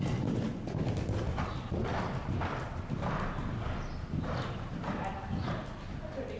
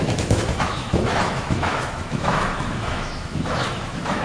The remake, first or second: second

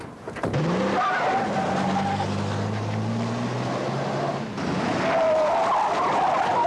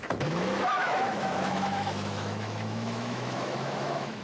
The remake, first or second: second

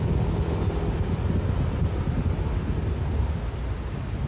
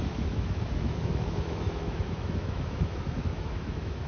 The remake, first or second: second